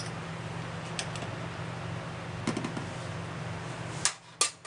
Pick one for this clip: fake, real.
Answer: real